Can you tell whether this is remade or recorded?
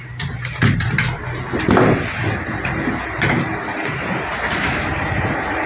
recorded